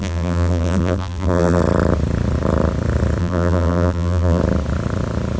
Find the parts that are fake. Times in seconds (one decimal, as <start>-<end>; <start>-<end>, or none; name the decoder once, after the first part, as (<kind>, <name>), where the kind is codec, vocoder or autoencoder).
0.0-1.6 (vocoder, BigVGAN v2); 3.2-4.4